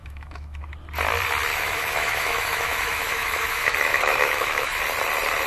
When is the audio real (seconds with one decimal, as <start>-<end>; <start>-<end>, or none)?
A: 0.7-1.5; 4.8-5.5